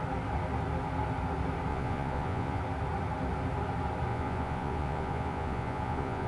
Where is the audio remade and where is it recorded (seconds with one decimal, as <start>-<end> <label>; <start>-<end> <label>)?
0.0-1.7 recorded; 1.7-2.6 remade; 2.6-4.1 recorded; 4.1-6.3 remade